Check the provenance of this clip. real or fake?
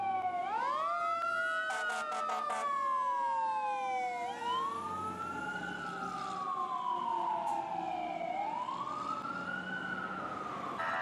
real